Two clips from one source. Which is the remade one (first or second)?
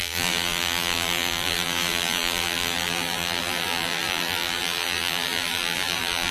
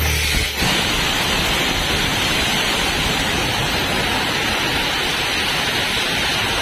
first